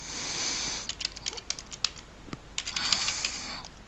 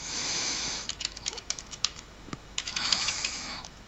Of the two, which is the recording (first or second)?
first